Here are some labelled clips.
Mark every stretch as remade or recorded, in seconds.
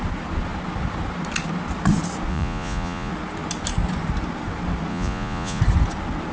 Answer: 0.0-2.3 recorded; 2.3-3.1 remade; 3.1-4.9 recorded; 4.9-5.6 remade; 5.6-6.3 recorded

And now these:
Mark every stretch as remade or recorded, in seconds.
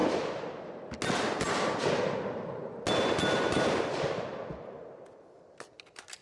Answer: 0.0-6.2 recorded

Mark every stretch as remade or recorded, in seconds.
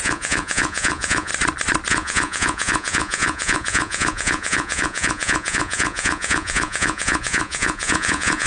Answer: 0.0-1.3 remade; 1.3-1.9 recorded; 1.9-8.5 remade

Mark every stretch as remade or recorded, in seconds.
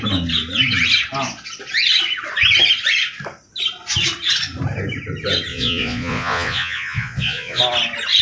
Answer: 0.0-5.5 recorded; 5.5-7.6 remade; 7.6-8.2 recorded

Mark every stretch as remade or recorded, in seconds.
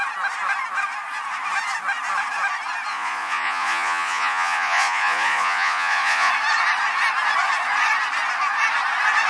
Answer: 0.0-2.9 recorded; 2.9-6.3 remade; 6.3-9.3 recorded